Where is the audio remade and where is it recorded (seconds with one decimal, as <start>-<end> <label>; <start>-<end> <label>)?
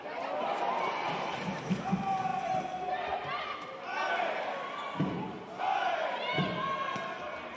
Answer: 0.0-7.6 recorded